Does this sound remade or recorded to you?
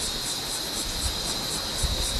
recorded